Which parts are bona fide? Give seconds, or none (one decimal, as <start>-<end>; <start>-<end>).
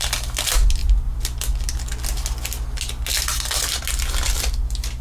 0.0-5.0